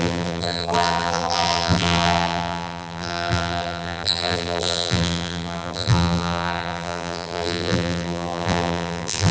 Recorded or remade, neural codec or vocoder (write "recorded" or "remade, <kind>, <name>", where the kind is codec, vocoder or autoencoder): remade, vocoder, BigVGAN v2